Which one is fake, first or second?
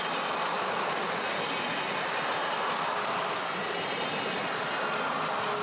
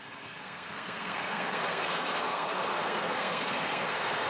second